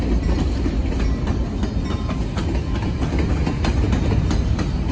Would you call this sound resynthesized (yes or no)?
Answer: no